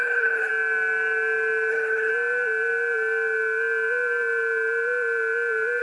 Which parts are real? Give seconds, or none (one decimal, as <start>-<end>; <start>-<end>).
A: 0.5-1.7; 2.1-5.8